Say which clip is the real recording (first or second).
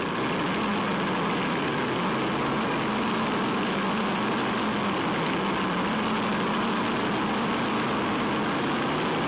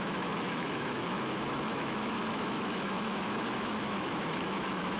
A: first